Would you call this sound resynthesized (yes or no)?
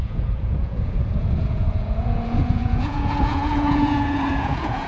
yes